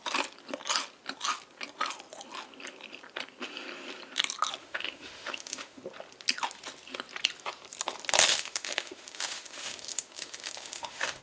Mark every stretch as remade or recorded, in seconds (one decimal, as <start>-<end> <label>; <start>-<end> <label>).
0.0-4.6 recorded; 4.6-5.8 remade; 5.8-8.3 recorded; 8.3-11.2 remade